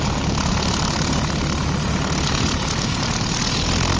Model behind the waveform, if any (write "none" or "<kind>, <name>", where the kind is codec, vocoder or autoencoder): none